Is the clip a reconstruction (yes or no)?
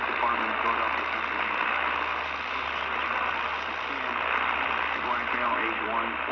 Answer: no